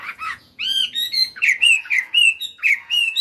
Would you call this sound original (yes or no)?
no